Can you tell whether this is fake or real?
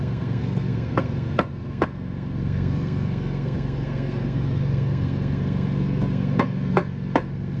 fake